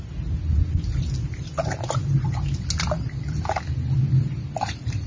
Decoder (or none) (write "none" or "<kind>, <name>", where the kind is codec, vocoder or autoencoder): none